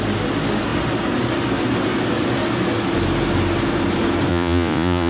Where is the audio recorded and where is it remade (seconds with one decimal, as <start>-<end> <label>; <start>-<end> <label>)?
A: 0.0-4.3 recorded; 4.3-5.1 remade